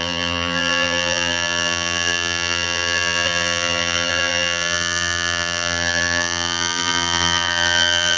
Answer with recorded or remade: remade